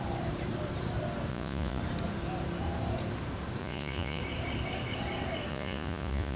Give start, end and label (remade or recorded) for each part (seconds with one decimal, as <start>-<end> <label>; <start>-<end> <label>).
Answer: 0.0-1.3 recorded; 1.3-1.8 remade; 1.8-3.6 recorded; 3.6-4.2 remade; 4.2-5.5 recorded; 5.5-6.4 remade